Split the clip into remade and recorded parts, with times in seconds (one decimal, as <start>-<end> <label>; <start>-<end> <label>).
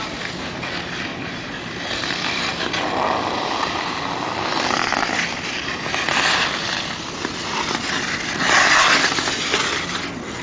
0.0-1.1 recorded; 1.1-1.7 remade; 1.7-10.4 recorded